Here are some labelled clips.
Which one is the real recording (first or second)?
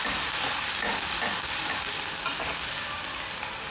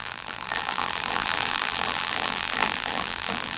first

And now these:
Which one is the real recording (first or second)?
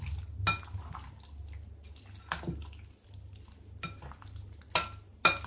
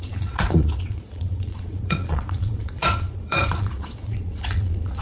first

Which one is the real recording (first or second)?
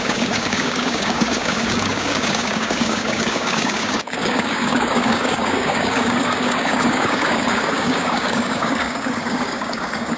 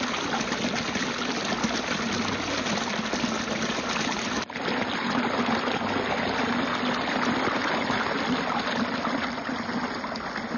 second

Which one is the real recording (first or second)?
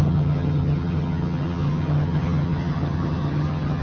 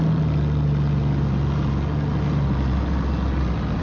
second